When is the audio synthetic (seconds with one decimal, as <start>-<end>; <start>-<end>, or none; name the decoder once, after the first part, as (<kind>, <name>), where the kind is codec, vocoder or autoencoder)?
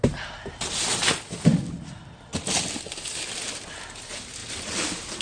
4.4-5.2 (vocoder, BigVGAN v2)